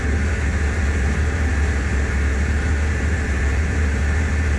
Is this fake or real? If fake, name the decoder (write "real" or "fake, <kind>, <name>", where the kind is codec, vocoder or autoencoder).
fake, vocoder, BigVGAN v2